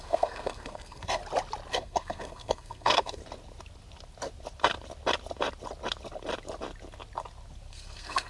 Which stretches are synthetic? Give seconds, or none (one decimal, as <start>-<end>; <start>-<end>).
0.0-1.2; 1.7-3.2; 7.7-8.3